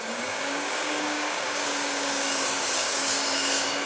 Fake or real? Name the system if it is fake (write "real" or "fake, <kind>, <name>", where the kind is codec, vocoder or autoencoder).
fake, codec, DAC